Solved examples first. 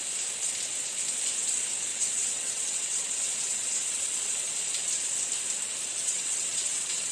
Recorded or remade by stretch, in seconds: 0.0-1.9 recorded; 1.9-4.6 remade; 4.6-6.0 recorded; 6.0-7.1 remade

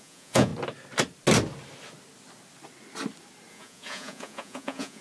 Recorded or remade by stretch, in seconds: 0.0-0.5 remade; 0.5-3.5 recorded; 3.5-5.0 remade

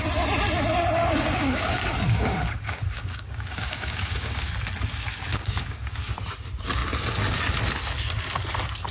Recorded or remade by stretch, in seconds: 0.0-1.0 recorded; 1.0-4.5 remade; 4.5-5.3 recorded; 5.3-6.1 remade; 6.1-8.9 recorded

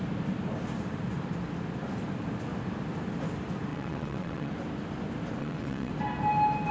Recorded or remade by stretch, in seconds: 0.0-3.7 recorded; 3.7-4.5 remade; 4.5-5.4 recorded; 5.4-5.9 remade; 5.9-6.7 recorded

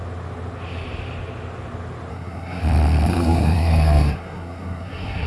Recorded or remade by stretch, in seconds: 0.0-2.1 recorded; 2.1-2.6 remade; 2.6-3.1 recorded; 3.1-5.3 remade

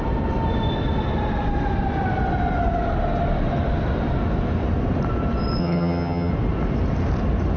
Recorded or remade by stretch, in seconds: 0.0-5.6 recorded; 5.6-6.3 remade; 6.3-7.6 recorded